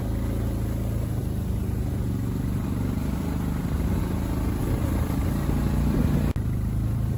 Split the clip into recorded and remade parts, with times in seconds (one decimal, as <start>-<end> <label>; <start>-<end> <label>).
0.0-7.2 recorded